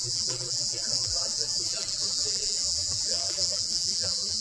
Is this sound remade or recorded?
remade